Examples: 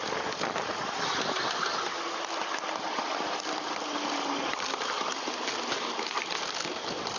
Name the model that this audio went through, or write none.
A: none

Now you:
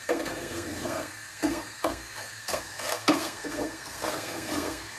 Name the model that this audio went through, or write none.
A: codec, SNAC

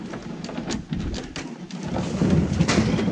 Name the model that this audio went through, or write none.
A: none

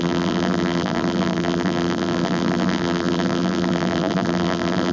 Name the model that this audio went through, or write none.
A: vocoder, BigVGAN v2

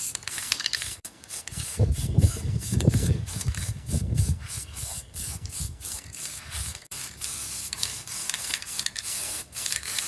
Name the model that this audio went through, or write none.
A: codec, SNAC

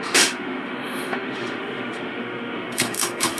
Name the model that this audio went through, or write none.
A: autoencoder, DAC-VAE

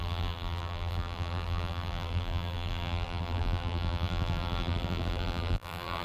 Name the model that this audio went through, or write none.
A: vocoder, BigVGAN v2